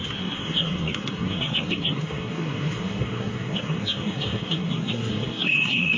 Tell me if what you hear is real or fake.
fake